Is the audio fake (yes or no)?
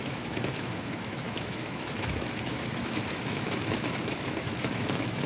yes